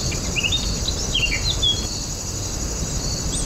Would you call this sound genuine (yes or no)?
yes